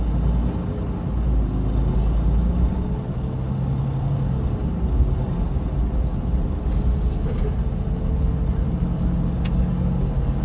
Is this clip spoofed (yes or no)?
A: no